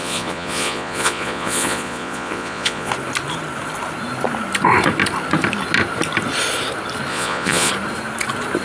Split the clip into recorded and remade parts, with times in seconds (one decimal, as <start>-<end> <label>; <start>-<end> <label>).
0.0-2.9 remade; 2.9-7.1 recorded; 7.1-7.7 remade; 7.7-8.6 recorded